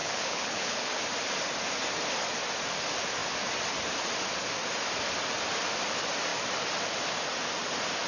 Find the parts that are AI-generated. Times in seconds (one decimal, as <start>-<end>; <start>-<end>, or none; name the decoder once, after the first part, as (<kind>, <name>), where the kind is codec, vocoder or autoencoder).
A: 0.0-1.0 (codec, HILCodec)